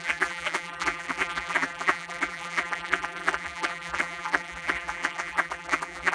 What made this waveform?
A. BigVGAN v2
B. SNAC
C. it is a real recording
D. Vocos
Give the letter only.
A